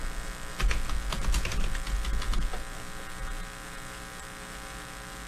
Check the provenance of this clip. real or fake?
real